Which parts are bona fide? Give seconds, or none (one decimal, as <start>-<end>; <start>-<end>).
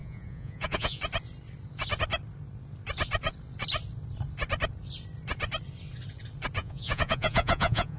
1.0-6.6